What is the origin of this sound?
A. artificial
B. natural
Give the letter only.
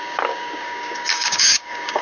A